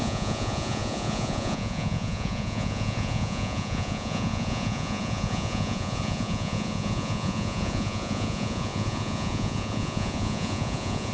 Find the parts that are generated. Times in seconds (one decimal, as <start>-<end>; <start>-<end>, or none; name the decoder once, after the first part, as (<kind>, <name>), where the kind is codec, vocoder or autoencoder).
0.0-11.1 (vocoder, Vocos)